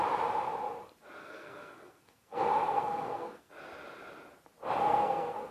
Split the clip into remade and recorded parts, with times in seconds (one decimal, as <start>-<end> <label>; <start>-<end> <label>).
0.0-1.2 recorded; 1.2-3.5 remade; 3.5-4.8 recorded; 4.8-5.5 remade